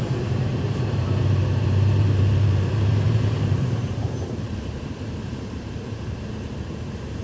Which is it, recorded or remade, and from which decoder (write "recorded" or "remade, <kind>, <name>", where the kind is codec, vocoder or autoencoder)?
remade, vocoder, BigVGAN v2